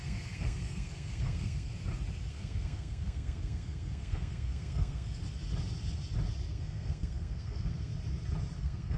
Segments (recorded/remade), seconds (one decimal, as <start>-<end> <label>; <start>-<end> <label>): 0.0-1.7 remade; 1.7-2.3 recorded; 2.3-5.2 remade; 5.2-6.5 recorded; 6.5-7.9 remade; 7.9-8.6 recorded; 8.6-9.0 remade